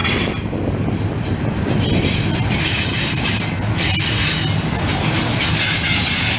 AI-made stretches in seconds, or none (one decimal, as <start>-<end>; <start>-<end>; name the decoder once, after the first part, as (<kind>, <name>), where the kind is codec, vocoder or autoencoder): none